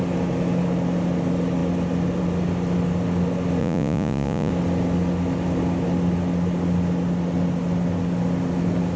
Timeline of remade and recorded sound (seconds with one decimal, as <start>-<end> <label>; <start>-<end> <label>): 0.0-3.6 recorded; 3.6-4.5 remade; 4.5-9.0 recorded